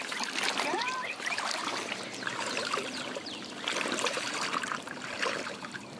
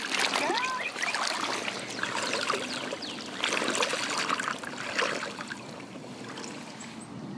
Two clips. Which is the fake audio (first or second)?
first